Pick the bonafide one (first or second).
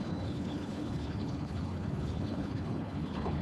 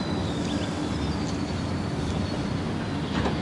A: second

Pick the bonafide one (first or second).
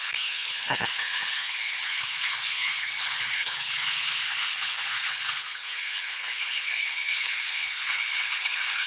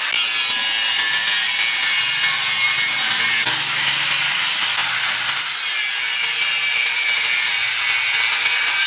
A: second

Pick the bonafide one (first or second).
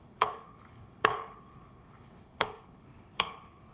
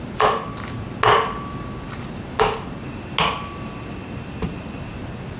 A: second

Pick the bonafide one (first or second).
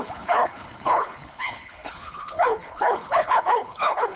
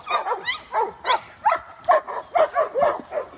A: second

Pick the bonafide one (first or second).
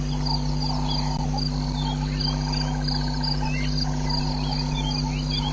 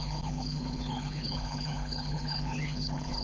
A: first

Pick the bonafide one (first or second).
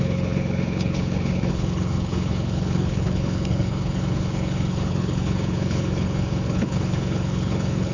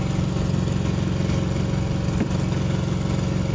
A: second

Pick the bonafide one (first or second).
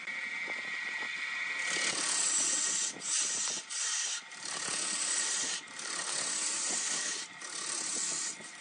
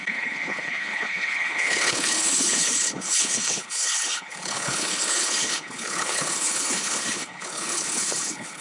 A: first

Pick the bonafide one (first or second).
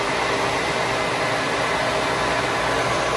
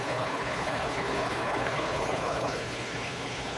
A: first